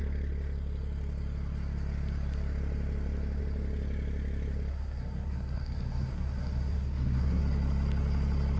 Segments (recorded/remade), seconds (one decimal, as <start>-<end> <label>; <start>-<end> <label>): 0.0-4.7 recorded; 4.7-7.4 remade; 7.4-8.6 recorded